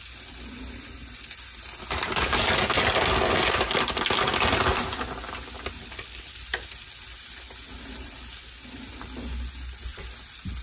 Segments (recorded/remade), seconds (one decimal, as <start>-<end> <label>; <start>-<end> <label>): 0.0-5.8 recorded; 5.8-6.3 remade; 6.3-10.6 recorded